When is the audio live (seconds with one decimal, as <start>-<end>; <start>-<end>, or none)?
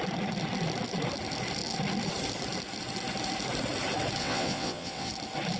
0.0-4.2; 5.1-5.6